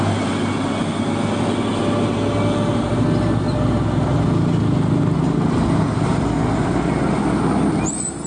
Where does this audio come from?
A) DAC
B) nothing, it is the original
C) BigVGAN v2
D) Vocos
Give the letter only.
B